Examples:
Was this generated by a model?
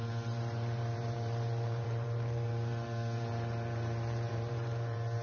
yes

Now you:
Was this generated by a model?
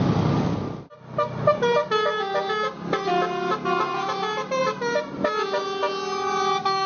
no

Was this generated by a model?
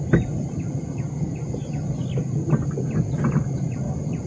no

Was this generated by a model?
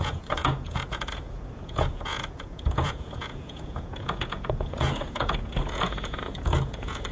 yes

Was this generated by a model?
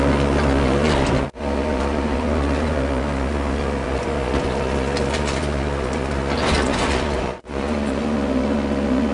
yes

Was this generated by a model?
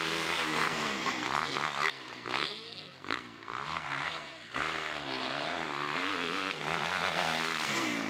yes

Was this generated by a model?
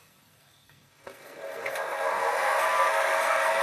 yes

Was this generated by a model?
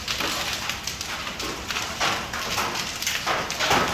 no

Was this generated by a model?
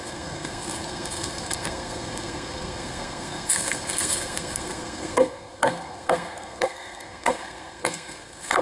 yes